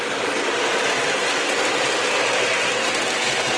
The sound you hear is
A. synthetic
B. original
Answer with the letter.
B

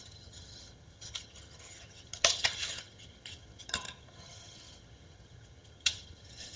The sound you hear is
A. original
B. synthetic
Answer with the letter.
B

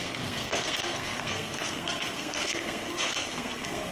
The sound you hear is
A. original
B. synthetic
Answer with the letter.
B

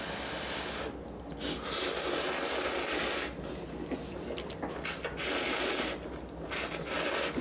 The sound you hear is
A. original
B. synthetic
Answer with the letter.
A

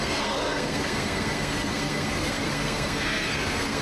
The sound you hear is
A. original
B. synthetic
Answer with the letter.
B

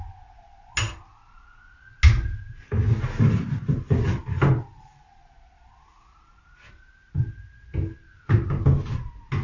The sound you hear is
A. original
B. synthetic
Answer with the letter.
A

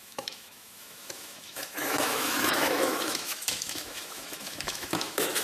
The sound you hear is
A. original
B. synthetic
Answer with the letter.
B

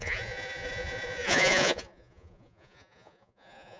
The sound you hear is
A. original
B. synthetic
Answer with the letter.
B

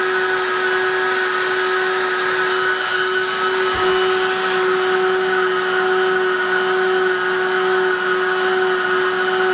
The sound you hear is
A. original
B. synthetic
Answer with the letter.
A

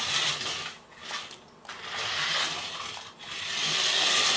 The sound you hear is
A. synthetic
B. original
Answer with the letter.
B